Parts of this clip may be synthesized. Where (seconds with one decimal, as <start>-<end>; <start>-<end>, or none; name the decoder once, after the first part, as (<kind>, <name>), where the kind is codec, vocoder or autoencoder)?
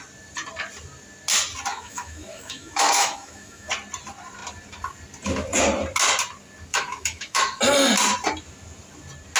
1.7-3.7 (autoencoder, DAC-VAE); 6.7-7.6